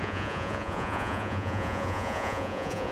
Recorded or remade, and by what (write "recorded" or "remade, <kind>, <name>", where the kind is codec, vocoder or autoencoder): remade, vocoder, Vocos